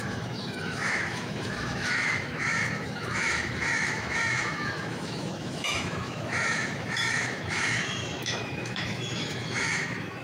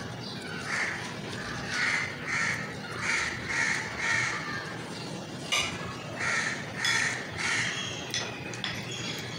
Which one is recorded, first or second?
second